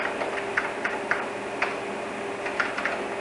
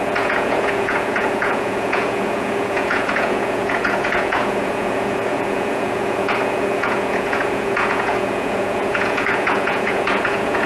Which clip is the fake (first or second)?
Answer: second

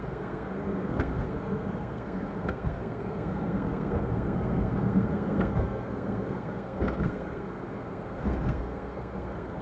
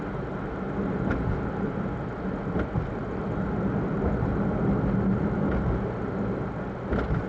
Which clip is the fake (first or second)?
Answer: first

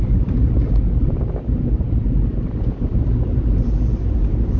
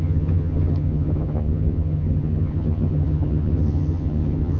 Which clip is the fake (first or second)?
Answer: second